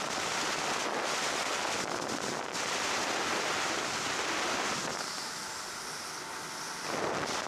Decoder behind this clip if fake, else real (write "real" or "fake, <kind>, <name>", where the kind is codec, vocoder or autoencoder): real